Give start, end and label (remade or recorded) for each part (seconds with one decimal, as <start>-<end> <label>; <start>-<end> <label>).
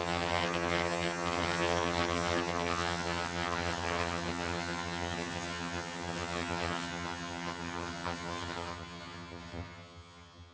0.0-10.5 remade